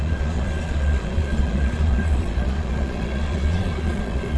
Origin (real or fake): fake